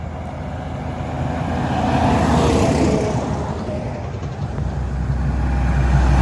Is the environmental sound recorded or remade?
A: recorded